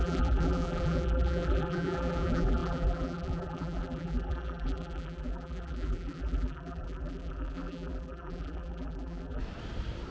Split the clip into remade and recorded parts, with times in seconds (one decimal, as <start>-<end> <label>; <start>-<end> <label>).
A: 0.0-9.4 remade; 9.4-10.1 recorded